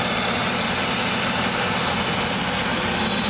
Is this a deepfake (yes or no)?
no